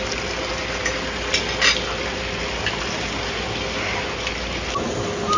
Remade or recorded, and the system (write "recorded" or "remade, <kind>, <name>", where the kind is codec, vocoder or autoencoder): recorded